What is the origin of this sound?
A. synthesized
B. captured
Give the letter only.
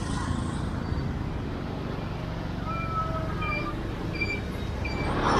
B